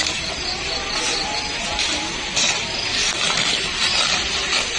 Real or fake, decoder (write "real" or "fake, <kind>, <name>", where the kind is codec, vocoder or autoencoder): real